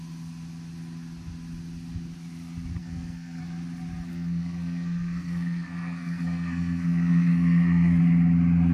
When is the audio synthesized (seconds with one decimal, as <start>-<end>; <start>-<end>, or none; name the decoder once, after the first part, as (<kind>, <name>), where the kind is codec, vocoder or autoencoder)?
2.8-3.4 (codec, SNAC); 4.1-8.0